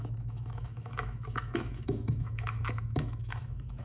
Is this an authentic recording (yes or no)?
no